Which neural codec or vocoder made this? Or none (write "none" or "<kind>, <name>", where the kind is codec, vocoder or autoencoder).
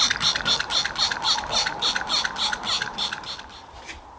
vocoder, BigVGAN v2